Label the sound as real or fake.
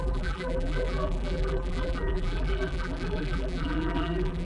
fake